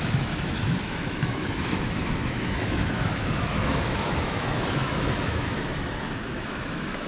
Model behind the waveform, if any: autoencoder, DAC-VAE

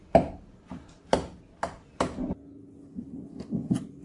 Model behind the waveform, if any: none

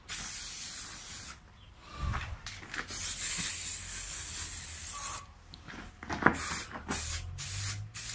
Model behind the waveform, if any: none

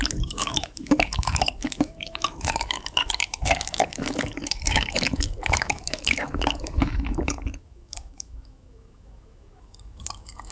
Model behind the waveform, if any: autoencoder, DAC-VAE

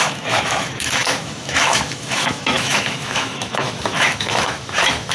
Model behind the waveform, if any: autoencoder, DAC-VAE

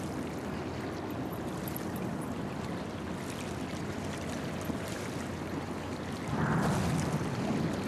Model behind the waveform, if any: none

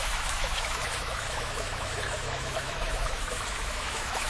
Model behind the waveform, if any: autoencoder, DAC-VAE